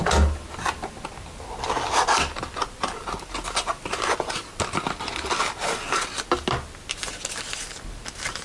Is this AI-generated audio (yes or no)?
no